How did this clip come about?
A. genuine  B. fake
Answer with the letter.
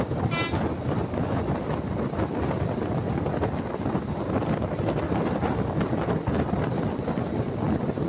A